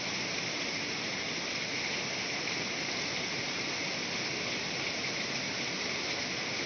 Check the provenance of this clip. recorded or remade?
recorded